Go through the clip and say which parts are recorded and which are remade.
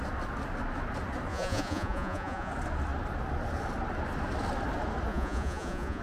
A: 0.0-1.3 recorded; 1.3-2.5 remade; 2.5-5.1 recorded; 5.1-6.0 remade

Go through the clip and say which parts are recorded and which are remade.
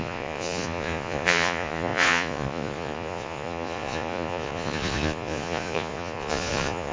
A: 0.0-6.9 remade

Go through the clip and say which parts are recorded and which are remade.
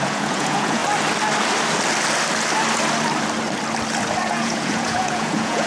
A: 0.0-0.8 remade; 0.8-4.2 recorded; 4.2-5.7 remade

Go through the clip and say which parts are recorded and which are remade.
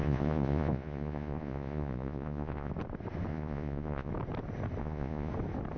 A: 0.0-2.7 remade; 2.7-3.3 recorded; 3.3-4.1 remade; 4.1-4.8 recorded; 4.8-5.3 remade; 5.3-5.8 recorded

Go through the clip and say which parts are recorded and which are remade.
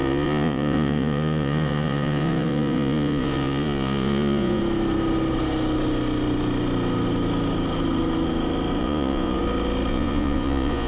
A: 0.0-4.6 remade; 4.6-8.8 recorded; 8.8-9.4 remade; 9.4-9.9 recorded; 9.9-10.9 remade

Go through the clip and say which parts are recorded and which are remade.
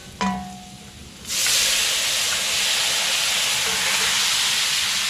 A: 0.0-5.1 recorded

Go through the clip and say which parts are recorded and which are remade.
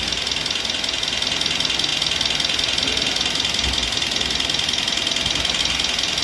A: 0.0-6.2 recorded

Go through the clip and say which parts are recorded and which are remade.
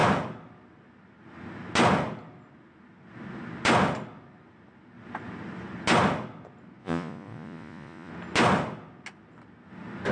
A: 0.0-6.8 recorded; 6.8-8.1 remade; 8.1-10.1 recorded